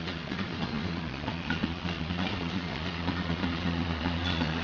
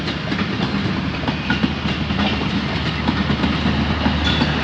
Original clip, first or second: second